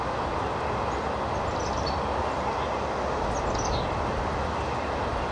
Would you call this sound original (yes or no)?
yes